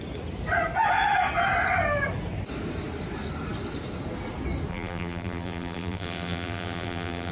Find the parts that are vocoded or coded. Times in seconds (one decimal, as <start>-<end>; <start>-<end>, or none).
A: 4.7-7.3